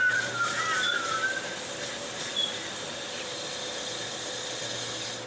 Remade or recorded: recorded